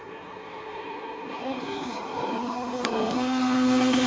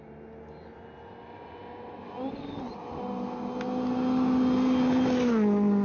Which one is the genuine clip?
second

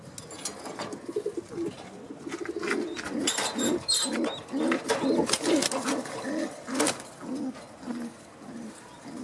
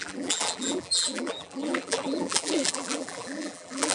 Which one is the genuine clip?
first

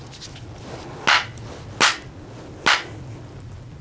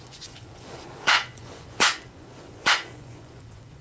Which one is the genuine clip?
first